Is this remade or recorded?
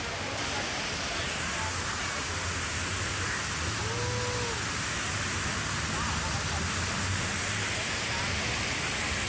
recorded